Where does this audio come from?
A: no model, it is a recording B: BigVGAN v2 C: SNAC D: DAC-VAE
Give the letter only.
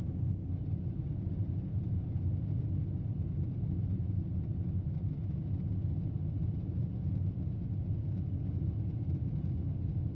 A